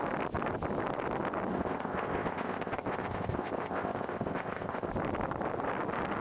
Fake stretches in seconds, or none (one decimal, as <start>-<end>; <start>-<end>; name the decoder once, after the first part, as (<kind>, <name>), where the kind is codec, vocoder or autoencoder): 1.5-4.9 (codec, ZipCodec)

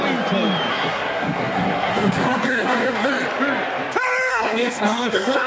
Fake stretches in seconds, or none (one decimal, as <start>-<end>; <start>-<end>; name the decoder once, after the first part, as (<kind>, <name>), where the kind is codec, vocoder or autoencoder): 0.7-3.1 (codec, SNAC); 4.3-5.5